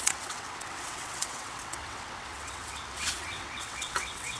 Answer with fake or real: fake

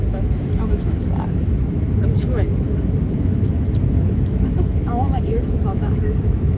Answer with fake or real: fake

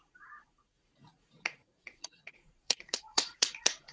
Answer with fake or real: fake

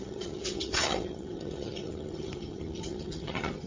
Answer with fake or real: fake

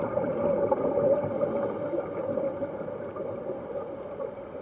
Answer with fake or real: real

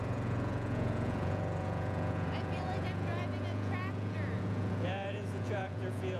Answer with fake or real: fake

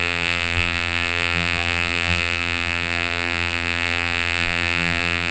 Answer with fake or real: fake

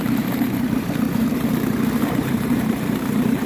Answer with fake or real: fake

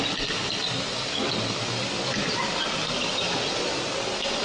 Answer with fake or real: real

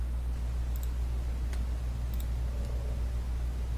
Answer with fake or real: real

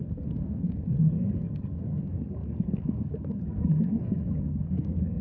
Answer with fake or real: fake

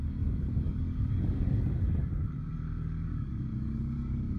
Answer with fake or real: fake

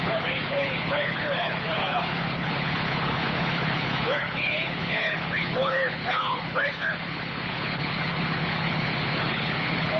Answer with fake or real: fake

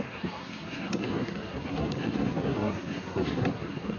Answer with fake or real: fake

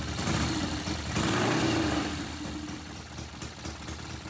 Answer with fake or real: real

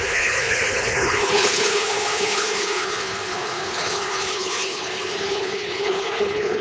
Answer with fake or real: fake